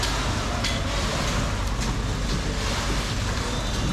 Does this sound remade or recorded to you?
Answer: recorded